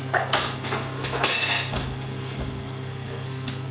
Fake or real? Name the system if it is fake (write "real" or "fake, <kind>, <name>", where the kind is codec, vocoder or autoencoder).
fake, codec, SNAC